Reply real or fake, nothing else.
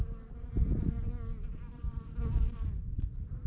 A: real